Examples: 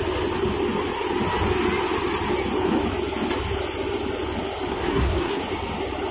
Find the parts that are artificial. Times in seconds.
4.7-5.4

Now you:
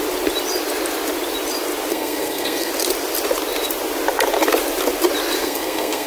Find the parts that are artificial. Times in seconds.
1.9-2.7; 5.4-6.1

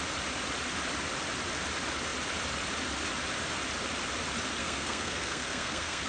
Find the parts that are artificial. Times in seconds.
4.6-6.1

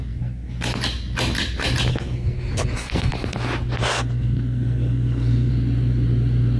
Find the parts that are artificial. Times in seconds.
0.0-0.7; 1.9-3.1; 3.8-5.5